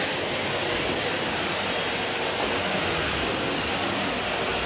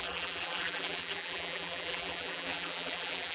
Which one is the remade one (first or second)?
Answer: second